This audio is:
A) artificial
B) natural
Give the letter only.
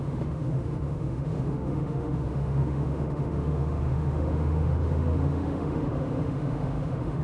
A